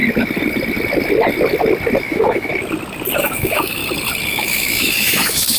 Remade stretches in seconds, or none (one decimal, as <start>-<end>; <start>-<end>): 2.0-2.5; 3.2-3.8; 4.3-5.6